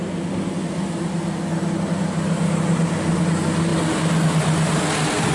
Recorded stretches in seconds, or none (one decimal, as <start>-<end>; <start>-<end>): 0.0-5.3